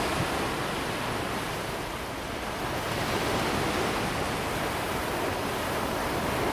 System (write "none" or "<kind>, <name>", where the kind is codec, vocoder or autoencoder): none